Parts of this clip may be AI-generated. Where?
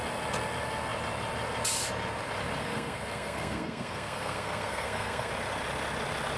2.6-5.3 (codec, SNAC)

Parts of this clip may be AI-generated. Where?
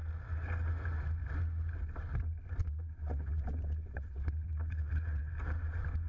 2.6-5.3 (vocoder, WaveNeXt)